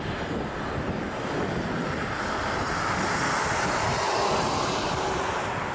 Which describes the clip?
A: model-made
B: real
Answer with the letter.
B